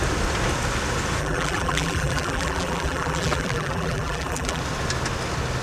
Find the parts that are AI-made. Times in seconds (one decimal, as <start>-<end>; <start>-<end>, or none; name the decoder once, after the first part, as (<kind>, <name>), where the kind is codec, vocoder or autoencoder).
1.2-4.6 (vocoder, BigVGAN v2)